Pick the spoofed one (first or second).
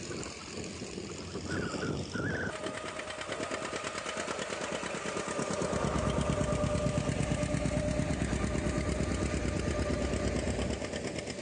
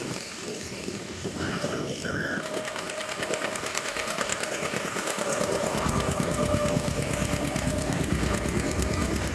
second